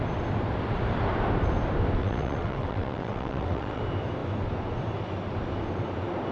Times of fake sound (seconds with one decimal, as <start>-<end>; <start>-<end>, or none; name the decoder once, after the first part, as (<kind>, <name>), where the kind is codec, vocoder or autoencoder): 2.0-3.8 (vocoder, WaveNeXt)